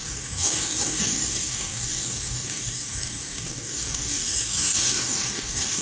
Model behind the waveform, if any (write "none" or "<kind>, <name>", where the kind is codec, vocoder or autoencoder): codec, DAC